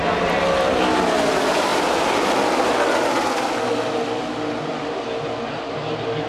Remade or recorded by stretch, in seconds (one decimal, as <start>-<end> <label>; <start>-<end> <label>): 0.0-6.3 recorded